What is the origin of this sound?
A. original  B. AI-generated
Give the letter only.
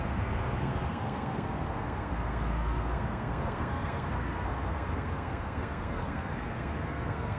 B